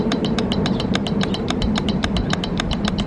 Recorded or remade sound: remade